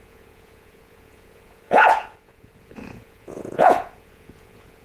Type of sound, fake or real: fake